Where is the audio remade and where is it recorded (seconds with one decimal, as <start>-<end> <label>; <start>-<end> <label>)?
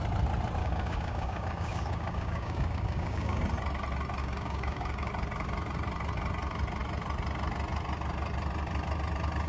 0.0-0.6 recorded; 0.6-3.4 remade; 3.4-4.2 recorded; 4.2-5.1 remade; 5.1-9.5 recorded